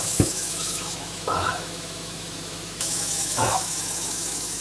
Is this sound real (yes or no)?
no